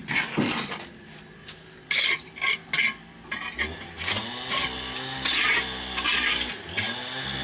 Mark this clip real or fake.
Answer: real